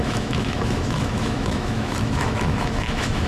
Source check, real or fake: fake